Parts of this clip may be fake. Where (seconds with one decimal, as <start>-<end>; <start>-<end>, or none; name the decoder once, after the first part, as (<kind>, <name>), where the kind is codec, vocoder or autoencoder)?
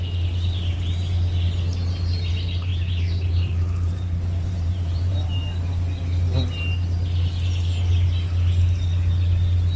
2.7-5.4 (vocoder, BigVGAN v2)